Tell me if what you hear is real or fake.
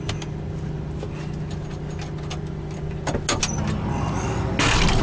real